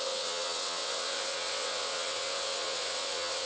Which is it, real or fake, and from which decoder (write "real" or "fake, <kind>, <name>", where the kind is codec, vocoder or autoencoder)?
fake, vocoder, WaveNeXt